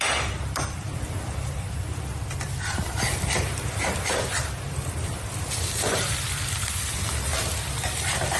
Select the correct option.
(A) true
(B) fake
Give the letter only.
B